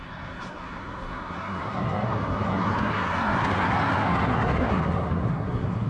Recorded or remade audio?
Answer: remade